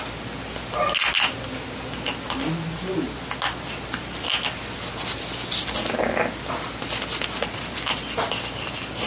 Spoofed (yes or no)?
no